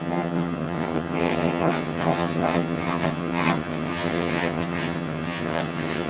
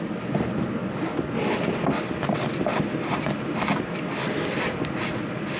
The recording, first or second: second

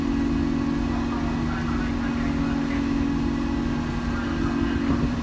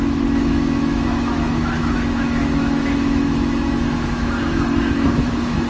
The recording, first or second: first